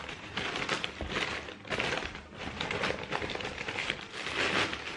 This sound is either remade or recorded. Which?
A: recorded